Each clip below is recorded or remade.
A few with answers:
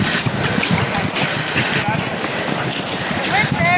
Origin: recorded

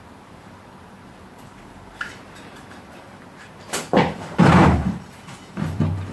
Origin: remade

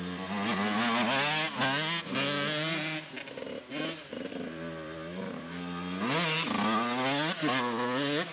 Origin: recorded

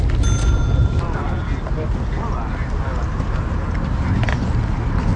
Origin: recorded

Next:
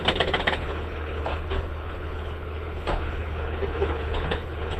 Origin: remade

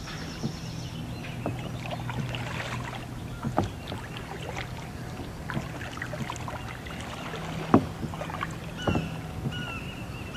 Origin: recorded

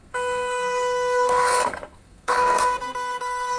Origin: remade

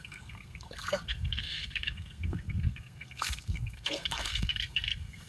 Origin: remade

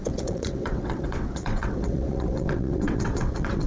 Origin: remade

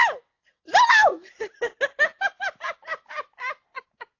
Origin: recorded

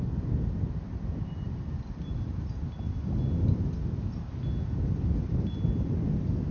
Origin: recorded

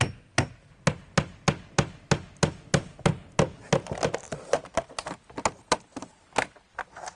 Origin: recorded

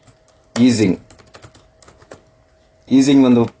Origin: recorded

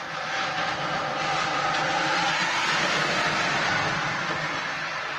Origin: recorded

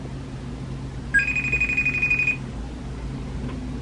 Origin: recorded